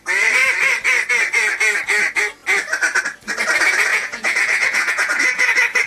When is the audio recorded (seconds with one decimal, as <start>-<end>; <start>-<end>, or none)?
0.0-3.9; 5.4-5.9